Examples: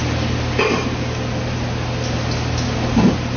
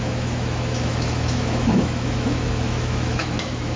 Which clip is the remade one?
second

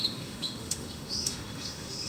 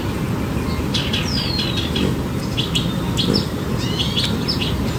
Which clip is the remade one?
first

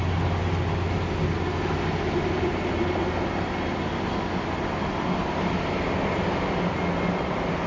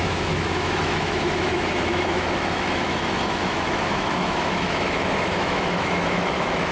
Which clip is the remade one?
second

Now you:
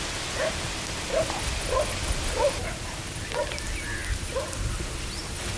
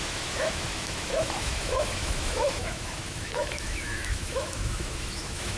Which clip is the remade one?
second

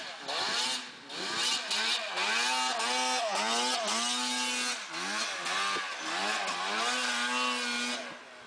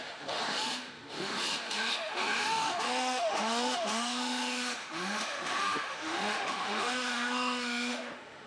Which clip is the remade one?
second